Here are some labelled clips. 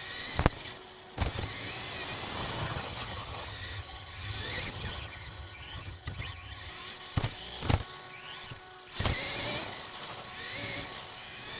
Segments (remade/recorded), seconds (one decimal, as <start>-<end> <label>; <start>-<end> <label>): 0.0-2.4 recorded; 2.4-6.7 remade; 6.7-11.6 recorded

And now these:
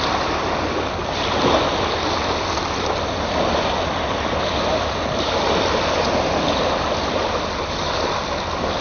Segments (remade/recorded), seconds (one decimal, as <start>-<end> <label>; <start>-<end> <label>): 0.0-8.8 recorded

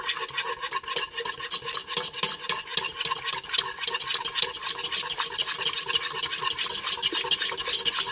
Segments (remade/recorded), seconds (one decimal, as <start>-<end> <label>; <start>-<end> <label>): 0.0-8.1 recorded

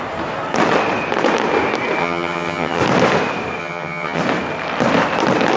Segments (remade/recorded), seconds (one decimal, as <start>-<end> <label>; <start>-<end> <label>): 0.0-2.0 recorded; 2.0-2.8 remade; 2.8-3.6 recorded; 3.6-4.2 remade; 4.2-5.6 recorded

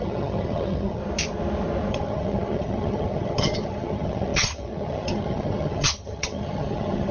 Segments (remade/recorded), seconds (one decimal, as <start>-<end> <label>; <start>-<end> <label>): 0.0-1.0 remade; 1.0-1.9 recorded; 1.9-7.1 remade